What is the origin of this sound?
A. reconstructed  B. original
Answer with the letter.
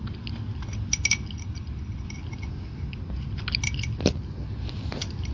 B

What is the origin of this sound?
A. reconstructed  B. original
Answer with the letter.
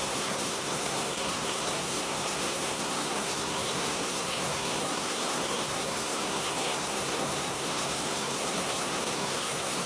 A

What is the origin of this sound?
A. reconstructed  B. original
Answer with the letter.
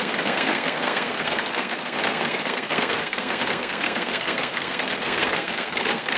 A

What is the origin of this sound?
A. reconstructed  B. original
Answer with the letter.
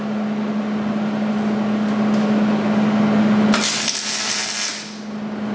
B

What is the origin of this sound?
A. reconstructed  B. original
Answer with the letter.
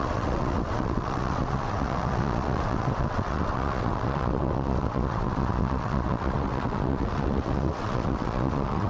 A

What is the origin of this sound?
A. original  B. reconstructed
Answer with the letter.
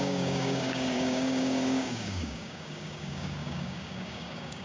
B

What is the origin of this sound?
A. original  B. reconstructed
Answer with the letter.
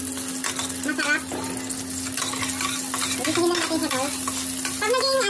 A